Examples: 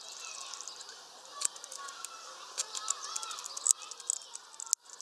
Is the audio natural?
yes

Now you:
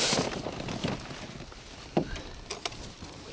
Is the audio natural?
yes